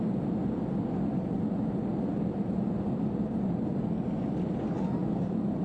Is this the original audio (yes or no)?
yes